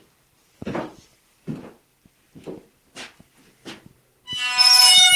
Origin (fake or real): real